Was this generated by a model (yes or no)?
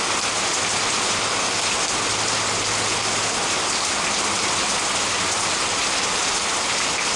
no